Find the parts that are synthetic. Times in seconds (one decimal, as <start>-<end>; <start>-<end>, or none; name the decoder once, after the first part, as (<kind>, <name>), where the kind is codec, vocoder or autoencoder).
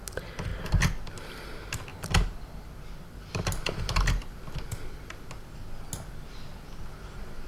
none